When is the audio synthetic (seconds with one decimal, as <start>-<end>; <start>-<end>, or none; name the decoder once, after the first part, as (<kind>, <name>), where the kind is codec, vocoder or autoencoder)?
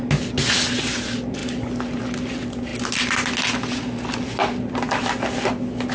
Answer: none